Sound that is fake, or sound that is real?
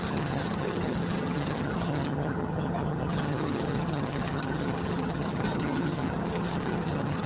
fake